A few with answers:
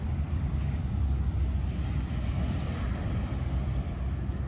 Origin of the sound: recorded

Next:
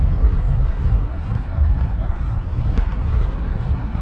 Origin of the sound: remade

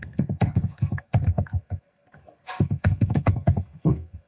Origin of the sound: remade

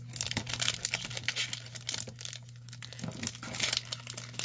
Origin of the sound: recorded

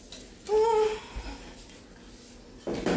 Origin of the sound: recorded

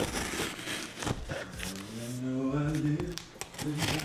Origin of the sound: recorded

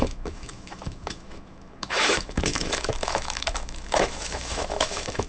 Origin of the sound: remade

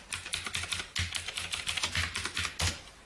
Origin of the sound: recorded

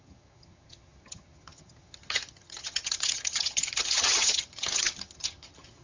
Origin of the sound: remade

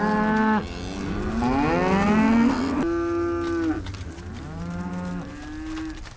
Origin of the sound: recorded